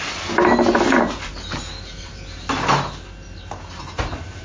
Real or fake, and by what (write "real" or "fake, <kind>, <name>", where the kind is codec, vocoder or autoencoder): real